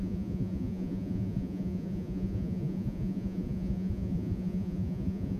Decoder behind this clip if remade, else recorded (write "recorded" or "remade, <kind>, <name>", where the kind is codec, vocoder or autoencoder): remade, vocoder, Vocos